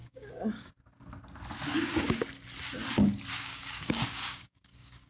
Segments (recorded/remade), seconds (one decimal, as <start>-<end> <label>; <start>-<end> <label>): 0.0-0.7 remade; 0.7-1.7 recorded; 1.7-2.2 remade; 2.2-3.3 recorded; 3.3-5.1 remade